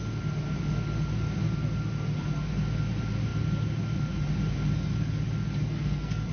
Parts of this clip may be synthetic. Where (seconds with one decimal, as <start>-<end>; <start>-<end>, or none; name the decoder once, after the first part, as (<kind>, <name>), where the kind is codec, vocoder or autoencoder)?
5.6-6.3 (codec, SNAC)